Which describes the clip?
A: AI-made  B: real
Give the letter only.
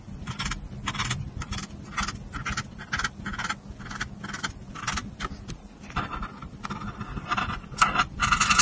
B